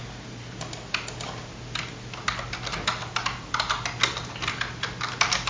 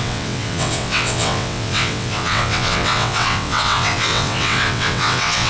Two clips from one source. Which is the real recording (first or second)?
first